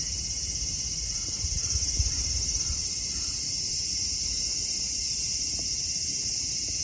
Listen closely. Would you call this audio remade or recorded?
remade